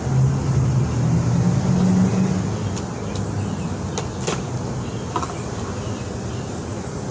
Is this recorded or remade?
recorded